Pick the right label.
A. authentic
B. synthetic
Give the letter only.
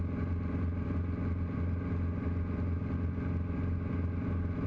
A